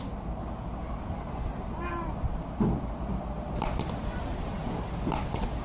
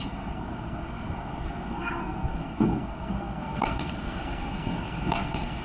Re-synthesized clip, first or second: second